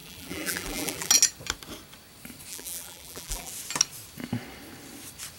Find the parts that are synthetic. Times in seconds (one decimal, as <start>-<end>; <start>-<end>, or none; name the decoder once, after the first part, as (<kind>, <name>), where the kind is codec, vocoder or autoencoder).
0.0-1.1 (vocoder, BigVGAN v2); 2.5-3.5

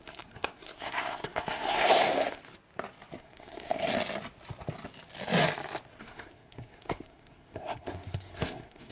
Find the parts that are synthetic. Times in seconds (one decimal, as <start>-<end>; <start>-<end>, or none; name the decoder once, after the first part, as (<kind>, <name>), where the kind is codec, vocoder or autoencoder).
0.0-2.4 (codec, SNAC); 3.2-3.9; 6.0-8.9